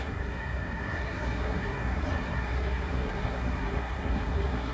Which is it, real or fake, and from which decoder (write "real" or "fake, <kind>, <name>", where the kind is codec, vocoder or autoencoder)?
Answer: fake, codec, SNAC